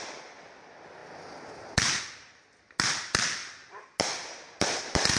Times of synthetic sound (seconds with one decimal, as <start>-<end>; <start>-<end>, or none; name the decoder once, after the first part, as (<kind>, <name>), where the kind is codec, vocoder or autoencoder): none